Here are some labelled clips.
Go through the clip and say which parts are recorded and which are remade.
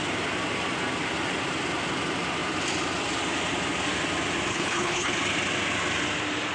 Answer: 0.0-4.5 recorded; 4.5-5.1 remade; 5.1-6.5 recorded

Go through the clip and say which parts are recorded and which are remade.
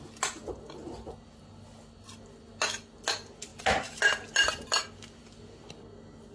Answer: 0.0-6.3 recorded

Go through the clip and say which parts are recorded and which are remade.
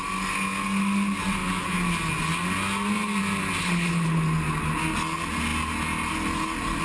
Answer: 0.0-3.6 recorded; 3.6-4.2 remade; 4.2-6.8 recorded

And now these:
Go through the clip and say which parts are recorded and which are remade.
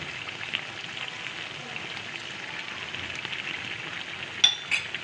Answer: 0.0-5.0 recorded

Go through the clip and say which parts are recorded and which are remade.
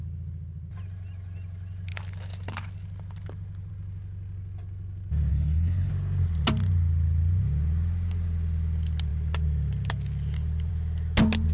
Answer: 0.0-5.3 recorded; 5.3-5.9 remade; 5.9-11.5 recorded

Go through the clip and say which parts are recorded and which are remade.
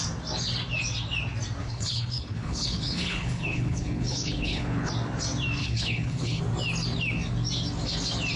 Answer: 0.0-1.6 recorded; 1.6-4.9 remade; 4.9-5.6 recorded; 5.6-6.4 remade; 6.4-8.4 recorded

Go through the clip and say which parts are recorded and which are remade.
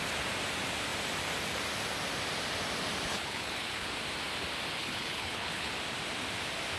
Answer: 0.0-3.1 recorded; 3.1-3.9 remade; 3.9-4.8 recorded; 4.8-5.7 remade; 5.7-6.8 recorded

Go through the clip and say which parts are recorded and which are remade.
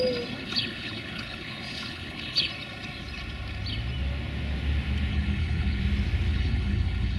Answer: 0.0-0.4 recorded; 0.4-2.5 remade; 2.5-5.1 recorded; 5.1-5.8 remade; 5.8-6.3 recorded; 6.3-7.2 remade